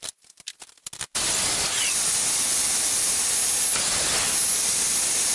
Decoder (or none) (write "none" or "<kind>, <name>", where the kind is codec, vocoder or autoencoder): none